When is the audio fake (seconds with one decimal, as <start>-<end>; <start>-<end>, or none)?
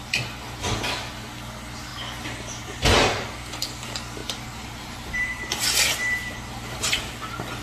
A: 4.2-7.1